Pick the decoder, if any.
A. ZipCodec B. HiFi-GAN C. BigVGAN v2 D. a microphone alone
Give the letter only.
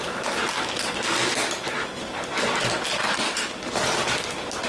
D